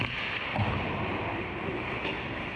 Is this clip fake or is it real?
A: real